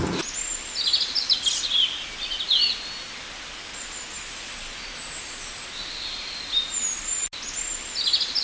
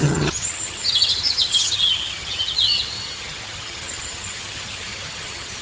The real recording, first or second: first